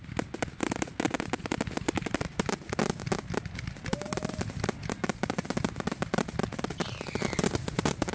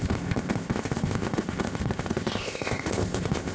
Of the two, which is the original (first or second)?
first